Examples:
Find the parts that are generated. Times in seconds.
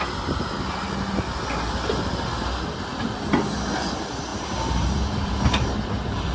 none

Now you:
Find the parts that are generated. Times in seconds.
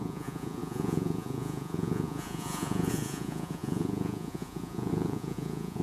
0.0-5.8 (vocoder, Vocos)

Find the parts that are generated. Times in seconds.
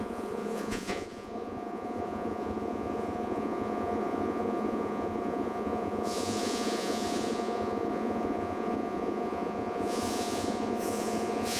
0.0-11.6 (vocoder, Vocos)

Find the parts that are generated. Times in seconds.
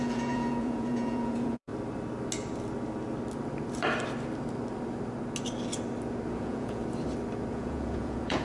0.0-1.7 (vocoder, Vocos); 6.3-6.8; 7.5-8.4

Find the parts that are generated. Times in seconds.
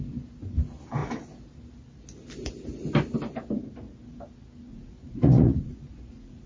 4.7-6.5 (vocoder, Vocos)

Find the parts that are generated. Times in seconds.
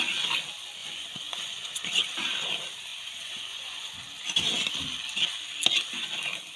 0.8-2.0 (vocoder, Vocos); 2.9-4.0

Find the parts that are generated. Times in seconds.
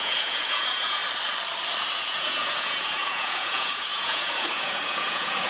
0.0-1.0 (vocoder, Vocos); 1.9-5.5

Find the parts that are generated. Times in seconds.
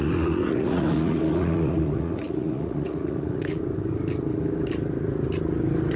0.0-3.6 (vocoder, Vocos)